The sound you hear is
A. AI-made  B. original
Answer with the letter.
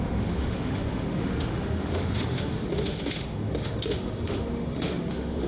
A